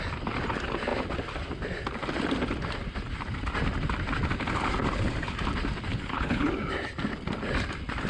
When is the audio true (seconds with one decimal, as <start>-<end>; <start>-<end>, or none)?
0.0-5.9; 6.5-8.1